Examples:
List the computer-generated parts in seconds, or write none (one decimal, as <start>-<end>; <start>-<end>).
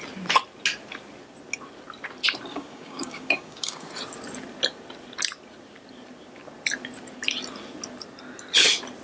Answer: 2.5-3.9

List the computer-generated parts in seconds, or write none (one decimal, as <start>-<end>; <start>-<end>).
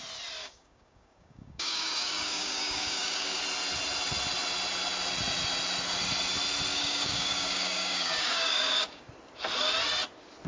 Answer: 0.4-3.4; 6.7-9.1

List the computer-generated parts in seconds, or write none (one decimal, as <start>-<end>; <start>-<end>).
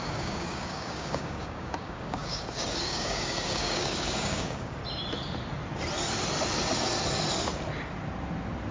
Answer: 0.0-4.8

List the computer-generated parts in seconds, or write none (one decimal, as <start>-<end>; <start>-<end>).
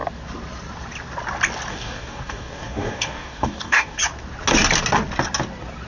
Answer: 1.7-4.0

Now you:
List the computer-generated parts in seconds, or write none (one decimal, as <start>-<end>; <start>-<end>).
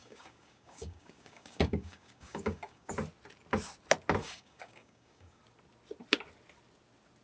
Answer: 0.0-2.9; 4.2-5.4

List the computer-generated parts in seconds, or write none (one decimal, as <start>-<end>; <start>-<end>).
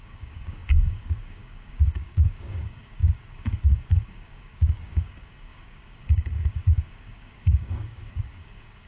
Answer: 0.0-8.9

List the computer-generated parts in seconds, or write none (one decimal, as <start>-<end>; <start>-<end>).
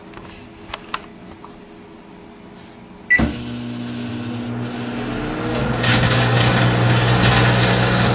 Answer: 5.5-6.6